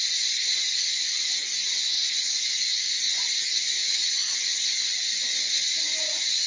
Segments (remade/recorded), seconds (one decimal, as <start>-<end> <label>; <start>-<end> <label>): 0.0-6.5 remade